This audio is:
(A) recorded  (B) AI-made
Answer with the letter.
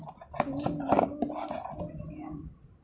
A